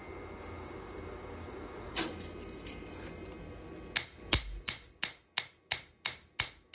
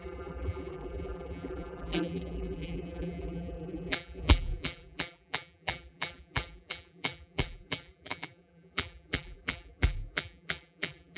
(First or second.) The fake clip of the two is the second